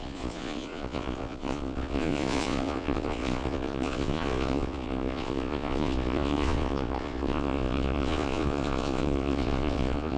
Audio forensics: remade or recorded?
remade